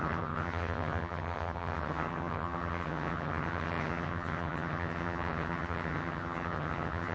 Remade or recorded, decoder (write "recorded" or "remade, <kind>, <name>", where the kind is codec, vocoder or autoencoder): remade, vocoder, HiFi-GAN